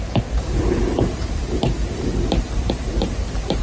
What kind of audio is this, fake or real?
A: fake